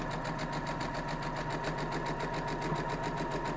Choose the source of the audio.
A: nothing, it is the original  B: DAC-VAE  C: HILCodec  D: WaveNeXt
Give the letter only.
A